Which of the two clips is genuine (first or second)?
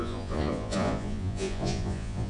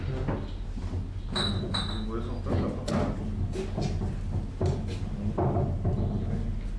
second